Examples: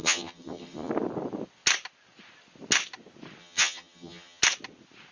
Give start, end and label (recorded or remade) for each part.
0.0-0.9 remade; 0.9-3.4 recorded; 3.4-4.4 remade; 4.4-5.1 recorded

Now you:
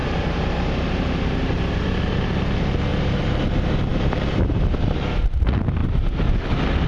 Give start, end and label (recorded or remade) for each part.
0.0-2.3 remade; 2.3-2.9 recorded; 2.9-3.4 remade; 3.4-3.9 recorded; 3.9-4.5 remade; 4.5-5.8 recorded; 5.8-6.4 remade; 6.4-6.9 recorded

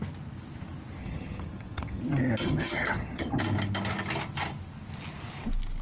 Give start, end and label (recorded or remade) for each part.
0.0-1.0 recorded; 1.0-2.0 remade; 2.0-2.4 recorded; 2.4-3.4 remade; 3.4-5.8 recorded

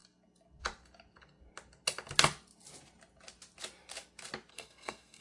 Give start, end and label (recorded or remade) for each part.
0.0-4.5 recorded; 4.5-5.2 remade